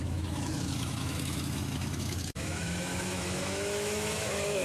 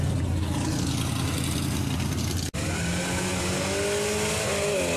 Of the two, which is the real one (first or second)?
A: second